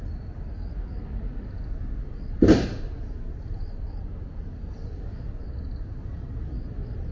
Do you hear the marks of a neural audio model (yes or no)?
no